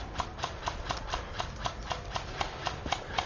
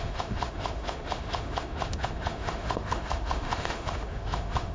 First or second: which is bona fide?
first